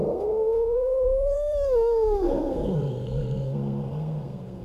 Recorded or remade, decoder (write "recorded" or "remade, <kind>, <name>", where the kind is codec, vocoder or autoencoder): remade, codec, SNAC